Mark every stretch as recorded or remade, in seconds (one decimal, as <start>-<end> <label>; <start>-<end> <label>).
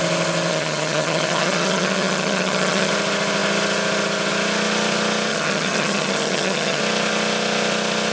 0.0-0.5 recorded; 0.5-2.9 remade; 2.9-5.3 recorded; 5.3-6.8 remade; 6.8-8.1 recorded